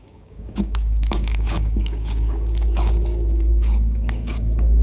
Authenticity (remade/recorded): remade